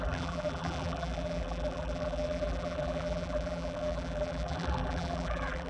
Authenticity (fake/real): fake